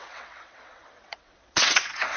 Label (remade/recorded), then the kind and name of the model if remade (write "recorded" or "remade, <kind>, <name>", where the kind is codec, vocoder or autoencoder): remade, vocoder, WaveNeXt